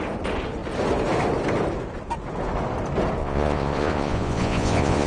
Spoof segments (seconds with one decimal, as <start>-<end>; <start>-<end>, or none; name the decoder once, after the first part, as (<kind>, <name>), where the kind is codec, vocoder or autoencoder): 3.2-5.1 (vocoder, Vocos)